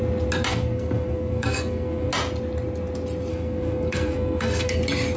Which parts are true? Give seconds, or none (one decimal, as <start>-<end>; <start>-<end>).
0.0-0.5; 2.1-3.3; 4.8-5.2